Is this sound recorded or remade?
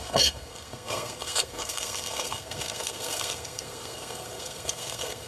remade